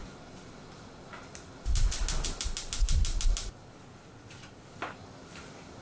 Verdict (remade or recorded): recorded